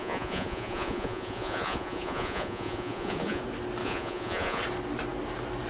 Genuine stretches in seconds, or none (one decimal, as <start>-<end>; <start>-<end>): 3.4-3.8; 4.6-5.7